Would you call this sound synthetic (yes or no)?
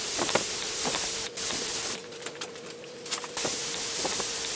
no